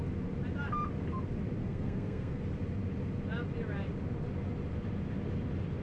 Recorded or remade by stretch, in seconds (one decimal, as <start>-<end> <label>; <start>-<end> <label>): 0.0-1.6 recorded; 1.6-2.4 remade; 2.4-5.8 recorded